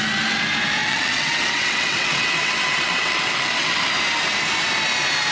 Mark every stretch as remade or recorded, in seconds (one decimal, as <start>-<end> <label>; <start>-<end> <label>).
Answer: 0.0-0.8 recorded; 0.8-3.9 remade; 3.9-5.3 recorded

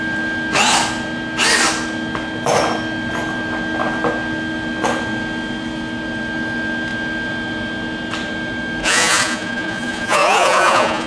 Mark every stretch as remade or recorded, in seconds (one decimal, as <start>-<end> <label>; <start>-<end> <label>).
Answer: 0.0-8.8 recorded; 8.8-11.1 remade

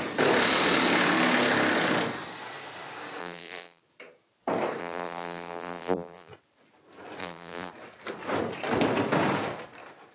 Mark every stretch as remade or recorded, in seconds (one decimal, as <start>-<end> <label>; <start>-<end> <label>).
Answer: 0.0-3.2 recorded; 3.2-3.8 remade; 3.8-4.8 recorded; 4.8-6.3 remade; 6.3-7.2 recorded; 7.2-7.7 remade; 7.7-10.1 recorded

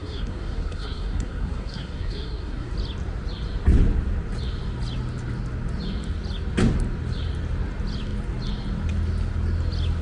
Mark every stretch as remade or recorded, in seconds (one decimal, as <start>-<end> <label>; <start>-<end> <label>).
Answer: 0.0-2.7 remade; 2.7-10.0 recorded